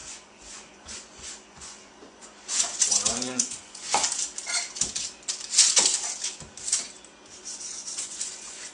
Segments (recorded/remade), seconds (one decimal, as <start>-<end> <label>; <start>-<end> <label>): 0.0-4.0 remade; 4.0-7.4 recorded; 7.4-8.7 remade